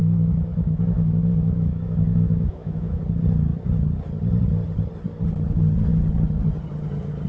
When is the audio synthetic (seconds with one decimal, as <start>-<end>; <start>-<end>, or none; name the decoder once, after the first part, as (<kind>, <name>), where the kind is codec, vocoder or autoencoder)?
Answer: 0.0-3.0 (autoencoder, DAC-VAE)